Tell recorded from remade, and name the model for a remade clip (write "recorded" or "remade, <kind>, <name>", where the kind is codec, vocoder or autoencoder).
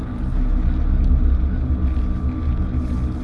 recorded